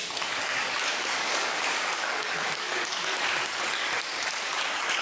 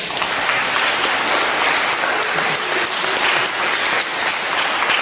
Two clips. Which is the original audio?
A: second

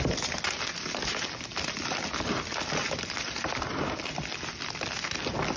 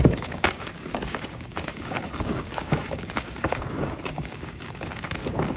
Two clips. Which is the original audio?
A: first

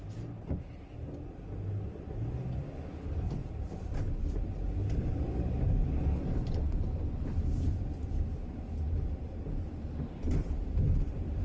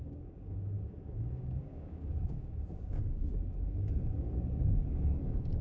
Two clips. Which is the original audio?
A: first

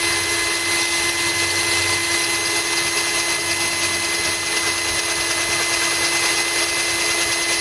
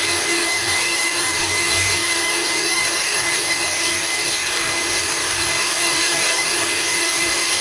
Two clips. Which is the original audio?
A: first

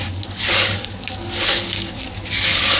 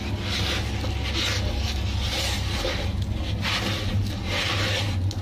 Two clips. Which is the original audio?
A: second